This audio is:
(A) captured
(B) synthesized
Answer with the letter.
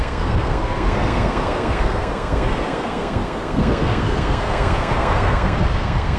B